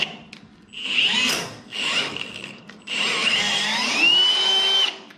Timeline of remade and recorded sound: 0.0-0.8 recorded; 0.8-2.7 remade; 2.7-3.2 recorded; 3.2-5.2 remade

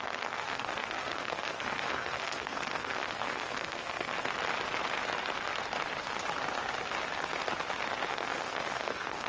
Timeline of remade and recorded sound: 0.0-4.1 remade; 4.1-8.1 recorded; 8.1-9.3 remade

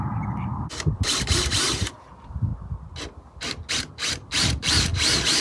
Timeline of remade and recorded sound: 0.0-2.5 remade; 2.5-3.7 recorded; 3.7-4.9 remade; 4.9-5.4 recorded

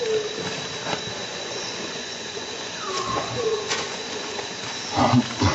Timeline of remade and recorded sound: 0.0-1.2 recorded; 1.2-4.5 remade; 4.5-5.5 recorded

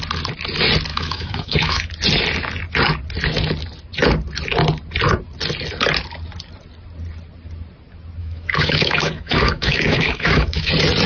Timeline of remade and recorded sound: 0.0-0.9 recorded; 0.9-1.9 remade; 1.9-8.2 recorded; 8.2-10.7 remade; 10.7-11.1 recorded